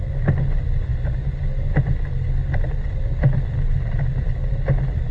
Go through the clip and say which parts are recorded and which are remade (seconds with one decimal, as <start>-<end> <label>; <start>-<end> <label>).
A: 0.0-5.1 recorded